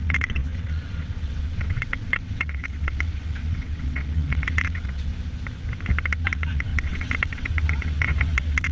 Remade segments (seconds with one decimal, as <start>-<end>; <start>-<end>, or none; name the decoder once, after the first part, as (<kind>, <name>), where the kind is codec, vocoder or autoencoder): 0.0-5.1 (vocoder, WaveNeXt); 6.2-8.7